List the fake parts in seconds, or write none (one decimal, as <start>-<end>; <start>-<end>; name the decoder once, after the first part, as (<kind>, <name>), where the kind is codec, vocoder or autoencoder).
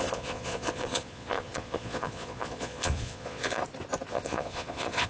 0.0-3.6 (vocoder, Vocos); 4.1-5.1